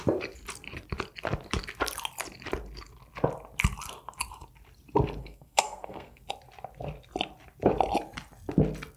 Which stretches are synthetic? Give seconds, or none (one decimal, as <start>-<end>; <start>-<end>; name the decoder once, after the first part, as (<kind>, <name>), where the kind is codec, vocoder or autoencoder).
5.2-6.2 (codec, SNAC)